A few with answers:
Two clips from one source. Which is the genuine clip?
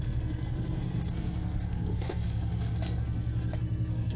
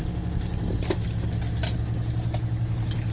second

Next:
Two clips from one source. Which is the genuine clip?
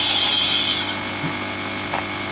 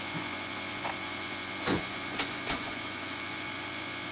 first